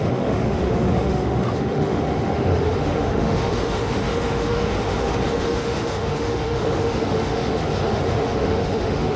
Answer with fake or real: fake